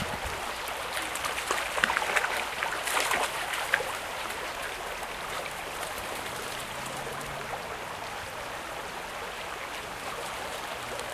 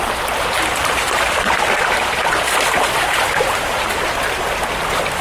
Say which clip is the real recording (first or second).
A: first